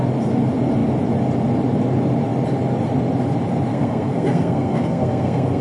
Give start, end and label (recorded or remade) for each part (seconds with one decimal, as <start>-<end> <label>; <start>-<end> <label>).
0.0-3.7 recorded; 3.7-5.6 remade

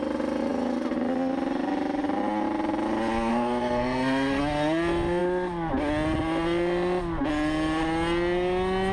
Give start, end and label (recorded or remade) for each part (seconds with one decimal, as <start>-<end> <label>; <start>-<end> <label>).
0.0-3.3 recorded; 3.3-4.4 remade; 4.4-8.9 recorded

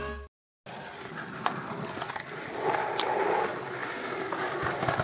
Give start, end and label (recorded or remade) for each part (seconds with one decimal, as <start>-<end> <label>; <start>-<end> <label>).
0.0-5.0 recorded

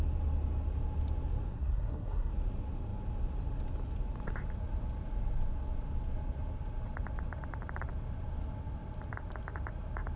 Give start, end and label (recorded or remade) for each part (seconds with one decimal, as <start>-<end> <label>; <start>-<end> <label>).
0.0-1.5 recorded; 1.5-2.3 remade; 2.3-10.2 recorded

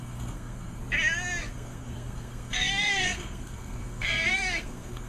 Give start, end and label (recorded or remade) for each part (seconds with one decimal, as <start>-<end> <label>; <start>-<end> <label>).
0.0-0.8 remade; 0.8-1.4 recorded; 1.4-5.1 remade

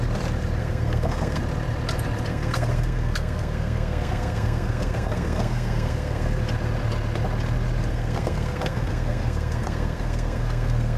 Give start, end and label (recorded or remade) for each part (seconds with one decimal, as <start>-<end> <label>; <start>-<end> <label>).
0.0-0.6 recorded; 0.6-1.4 remade; 1.4-2.3 recorded; 2.3-6.4 remade; 6.4-7.9 recorded; 7.9-11.0 remade